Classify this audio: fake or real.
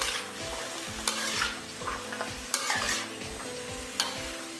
real